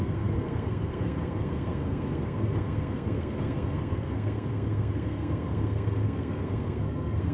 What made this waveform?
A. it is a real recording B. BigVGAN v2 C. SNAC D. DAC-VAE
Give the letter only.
C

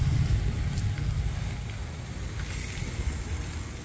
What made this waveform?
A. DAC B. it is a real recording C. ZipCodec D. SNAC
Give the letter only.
B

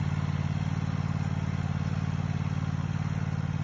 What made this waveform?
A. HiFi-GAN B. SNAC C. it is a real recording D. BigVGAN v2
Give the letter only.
C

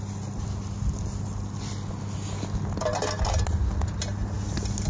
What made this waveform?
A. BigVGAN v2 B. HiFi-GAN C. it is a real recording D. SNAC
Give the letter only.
C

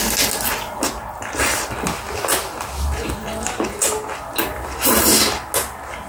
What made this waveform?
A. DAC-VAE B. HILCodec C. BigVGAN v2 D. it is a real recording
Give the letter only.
D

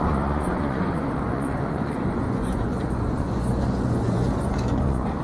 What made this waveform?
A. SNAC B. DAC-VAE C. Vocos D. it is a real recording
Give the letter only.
C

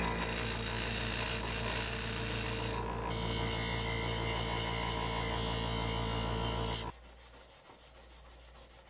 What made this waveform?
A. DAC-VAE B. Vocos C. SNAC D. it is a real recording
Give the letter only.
D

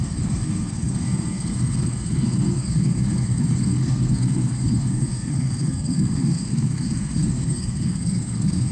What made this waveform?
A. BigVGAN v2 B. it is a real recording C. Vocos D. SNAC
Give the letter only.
D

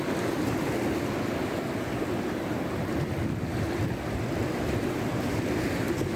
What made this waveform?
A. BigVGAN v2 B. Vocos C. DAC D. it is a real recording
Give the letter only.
D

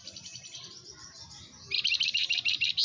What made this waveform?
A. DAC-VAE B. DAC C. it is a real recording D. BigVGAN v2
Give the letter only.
C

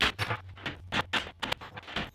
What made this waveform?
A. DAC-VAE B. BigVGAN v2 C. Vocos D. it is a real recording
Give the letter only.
D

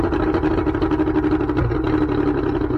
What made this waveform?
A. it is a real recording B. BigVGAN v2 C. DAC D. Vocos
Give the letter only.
A